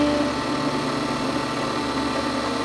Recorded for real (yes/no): yes